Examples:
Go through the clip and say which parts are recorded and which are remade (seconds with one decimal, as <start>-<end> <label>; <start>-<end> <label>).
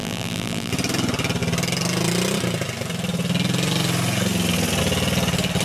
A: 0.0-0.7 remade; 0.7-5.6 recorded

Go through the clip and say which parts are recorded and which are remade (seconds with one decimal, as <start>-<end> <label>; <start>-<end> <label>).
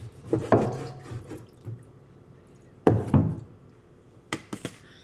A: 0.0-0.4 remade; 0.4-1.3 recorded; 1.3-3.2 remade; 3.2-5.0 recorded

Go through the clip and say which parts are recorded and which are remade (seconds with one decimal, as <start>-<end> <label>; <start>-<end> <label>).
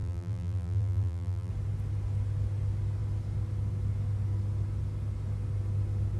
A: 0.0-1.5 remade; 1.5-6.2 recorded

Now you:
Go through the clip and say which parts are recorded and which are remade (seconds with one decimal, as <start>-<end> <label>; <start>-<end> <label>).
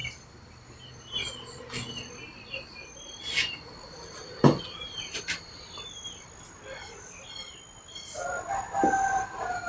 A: 0.0-0.9 remade; 0.9-9.7 recorded